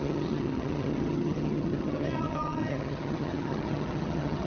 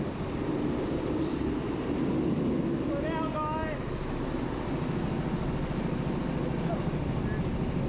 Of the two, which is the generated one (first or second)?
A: first